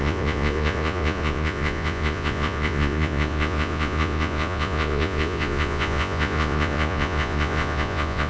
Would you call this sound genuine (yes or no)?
no